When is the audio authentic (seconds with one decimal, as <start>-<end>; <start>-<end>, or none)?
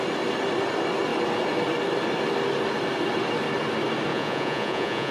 0.0-4.1